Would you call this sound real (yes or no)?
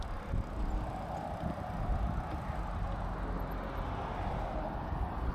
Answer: yes